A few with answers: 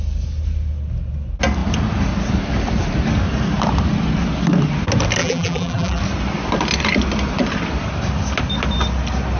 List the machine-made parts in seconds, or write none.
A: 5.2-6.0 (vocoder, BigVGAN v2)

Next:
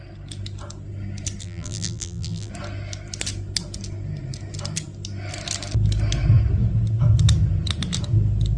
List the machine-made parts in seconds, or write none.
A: 1.4-2.5 (vocoder, BigVGAN v2)